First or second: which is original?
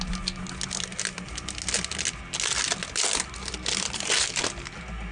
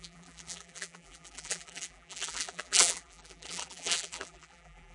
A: first